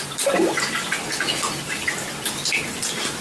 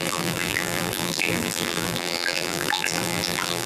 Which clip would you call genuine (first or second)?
first